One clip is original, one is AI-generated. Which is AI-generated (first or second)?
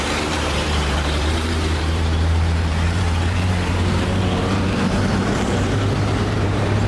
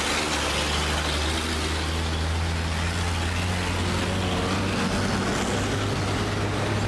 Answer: first